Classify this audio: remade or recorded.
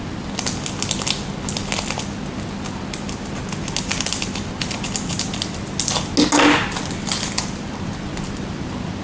recorded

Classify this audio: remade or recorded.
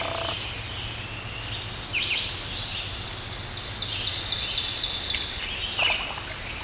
recorded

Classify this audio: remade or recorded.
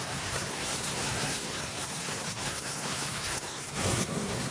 remade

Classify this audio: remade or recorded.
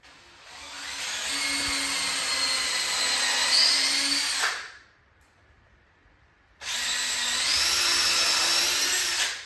recorded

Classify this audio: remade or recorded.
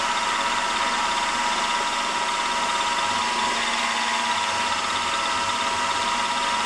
recorded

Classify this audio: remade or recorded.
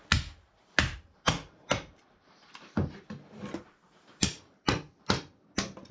recorded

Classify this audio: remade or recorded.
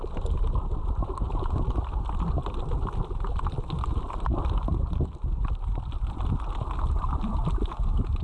recorded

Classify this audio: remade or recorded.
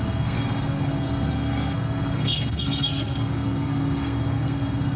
remade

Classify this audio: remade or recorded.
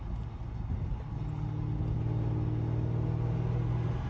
recorded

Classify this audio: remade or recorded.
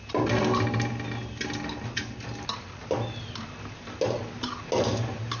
recorded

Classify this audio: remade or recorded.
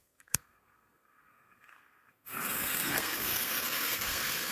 remade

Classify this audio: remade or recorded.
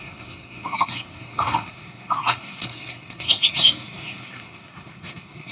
remade